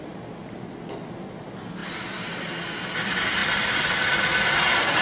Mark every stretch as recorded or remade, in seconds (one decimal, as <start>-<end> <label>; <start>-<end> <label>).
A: 0.0-1.8 recorded; 1.8-2.4 remade; 2.4-3.4 recorded; 3.4-5.0 remade